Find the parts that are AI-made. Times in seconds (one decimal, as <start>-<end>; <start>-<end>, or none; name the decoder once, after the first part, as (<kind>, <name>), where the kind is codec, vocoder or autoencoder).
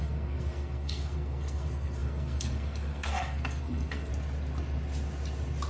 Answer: 0.0-4.1 (codec, SNAC)